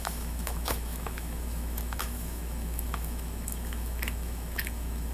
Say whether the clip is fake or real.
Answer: fake